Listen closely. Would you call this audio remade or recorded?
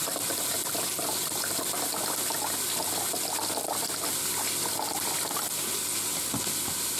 recorded